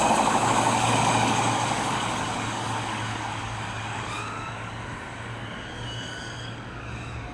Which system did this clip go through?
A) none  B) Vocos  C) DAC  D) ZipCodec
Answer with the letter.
C